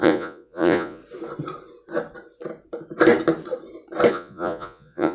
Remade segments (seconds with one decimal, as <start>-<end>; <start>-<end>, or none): 0.0-1.0; 4.1-5.1

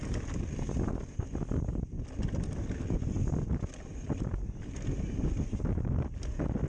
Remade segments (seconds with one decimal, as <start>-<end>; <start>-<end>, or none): none

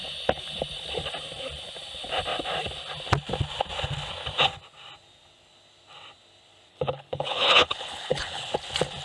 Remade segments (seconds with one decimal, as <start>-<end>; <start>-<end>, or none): 6.7-8.5

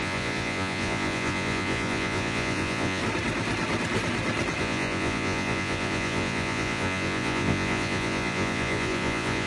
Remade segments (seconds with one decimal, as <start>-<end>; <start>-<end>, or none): 0.0-3.0; 4.6-9.5